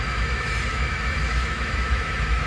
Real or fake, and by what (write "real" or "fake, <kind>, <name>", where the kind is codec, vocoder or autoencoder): fake, autoencoder, DAC-VAE